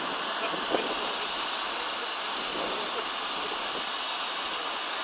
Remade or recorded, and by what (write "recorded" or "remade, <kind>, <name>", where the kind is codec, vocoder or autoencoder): recorded